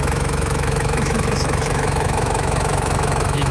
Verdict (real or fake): fake